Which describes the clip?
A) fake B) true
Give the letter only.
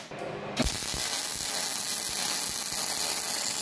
B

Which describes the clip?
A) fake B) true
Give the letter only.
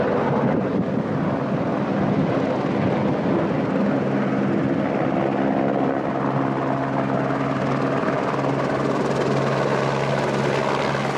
B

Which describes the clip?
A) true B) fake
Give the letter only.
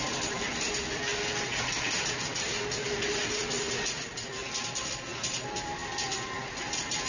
A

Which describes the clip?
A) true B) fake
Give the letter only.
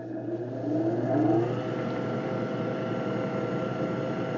A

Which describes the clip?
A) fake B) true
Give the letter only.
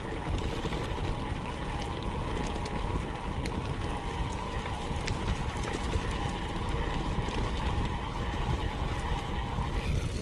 B